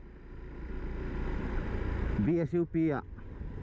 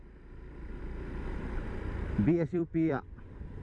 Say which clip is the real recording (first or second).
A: first